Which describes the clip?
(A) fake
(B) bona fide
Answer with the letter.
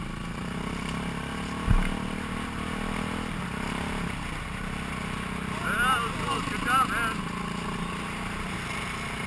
B